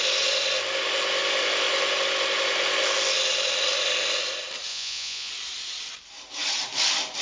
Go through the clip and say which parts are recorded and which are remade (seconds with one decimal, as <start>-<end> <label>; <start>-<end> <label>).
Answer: 0.0-4.7 recorded; 4.7-5.3 remade; 5.3-7.2 recorded